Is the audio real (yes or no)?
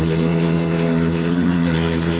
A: no